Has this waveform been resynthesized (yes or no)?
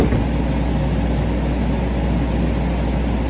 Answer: no